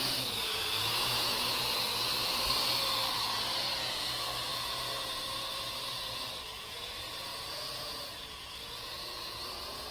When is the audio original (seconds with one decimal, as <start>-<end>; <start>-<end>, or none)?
2.1-3.1